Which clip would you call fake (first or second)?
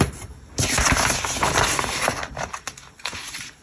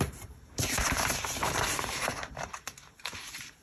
second